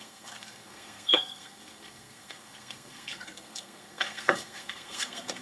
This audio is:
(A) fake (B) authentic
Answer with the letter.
A